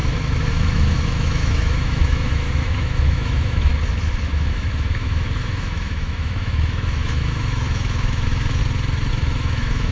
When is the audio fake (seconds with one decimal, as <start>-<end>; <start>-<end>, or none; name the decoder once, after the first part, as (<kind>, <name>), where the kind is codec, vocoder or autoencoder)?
0.0-3.7 (autoencoder, DAC-VAE); 4.2-8.6; 9.1-9.9